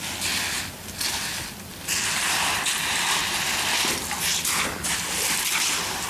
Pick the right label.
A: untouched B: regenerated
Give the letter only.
A